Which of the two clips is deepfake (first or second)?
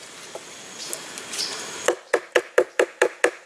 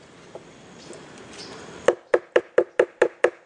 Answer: first